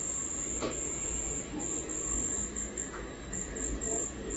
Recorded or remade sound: recorded